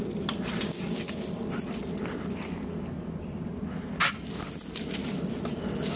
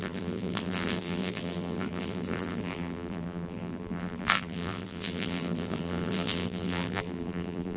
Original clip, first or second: first